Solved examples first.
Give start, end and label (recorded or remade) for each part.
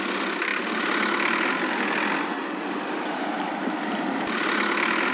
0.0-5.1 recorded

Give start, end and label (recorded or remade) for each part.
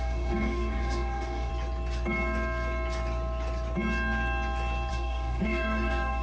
0.0-1.5 remade; 1.5-4.9 recorded; 4.9-6.2 remade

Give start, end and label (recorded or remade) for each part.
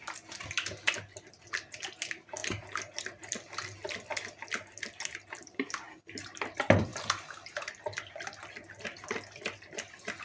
0.0-10.2 recorded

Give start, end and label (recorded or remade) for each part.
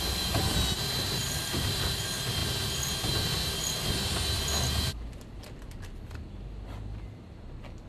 0.0-1.2 recorded; 1.2-1.9 remade; 1.9-7.9 recorded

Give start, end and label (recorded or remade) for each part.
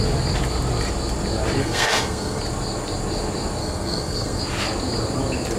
0.0-1.6 recorded; 1.6-2.4 remade; 2.4-3.6 recorded; 3.6-4.4 remade; 4.4-5.6 recorded